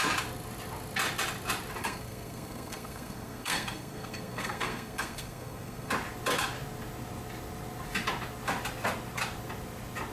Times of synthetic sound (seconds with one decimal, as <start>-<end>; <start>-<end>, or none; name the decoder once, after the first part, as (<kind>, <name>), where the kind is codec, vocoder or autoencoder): 1.8-5.9 (codec, SNAC)